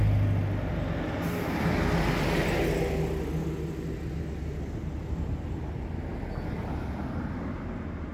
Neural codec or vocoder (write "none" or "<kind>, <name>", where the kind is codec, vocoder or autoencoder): none